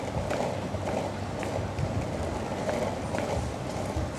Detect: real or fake real